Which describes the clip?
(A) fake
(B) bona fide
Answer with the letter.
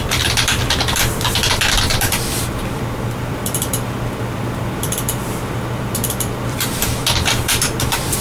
A